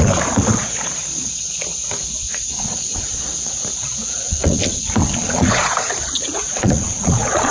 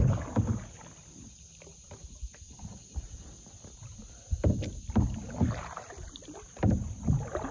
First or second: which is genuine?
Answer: second